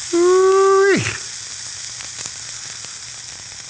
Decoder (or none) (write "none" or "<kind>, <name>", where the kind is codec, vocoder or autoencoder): none